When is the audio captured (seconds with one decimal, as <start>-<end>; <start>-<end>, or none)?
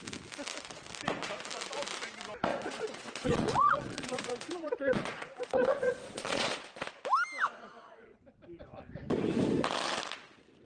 0.0-2.5; 6.9-10.6